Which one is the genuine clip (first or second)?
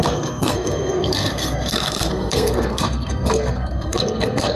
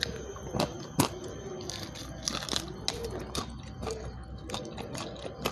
second